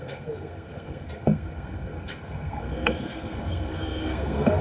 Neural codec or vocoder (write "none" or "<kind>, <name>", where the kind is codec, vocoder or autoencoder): codec, SNAC